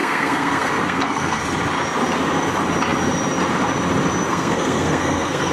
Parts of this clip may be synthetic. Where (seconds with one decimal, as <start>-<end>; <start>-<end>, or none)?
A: 0.0-1.4; 4.3-5.5